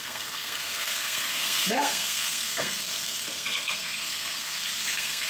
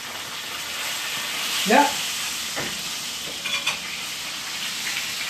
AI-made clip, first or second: first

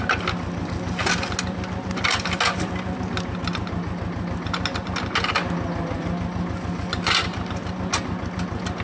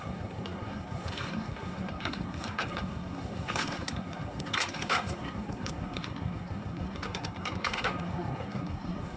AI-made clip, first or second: second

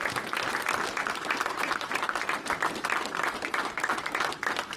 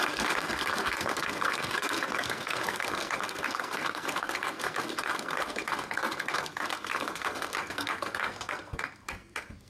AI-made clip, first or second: second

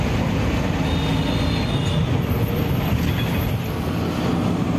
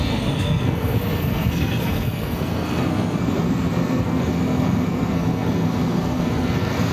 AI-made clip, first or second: second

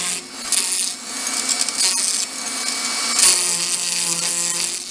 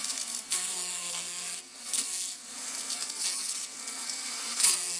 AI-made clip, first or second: second